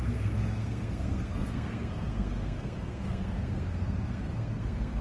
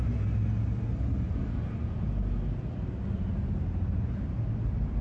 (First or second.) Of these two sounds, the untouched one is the second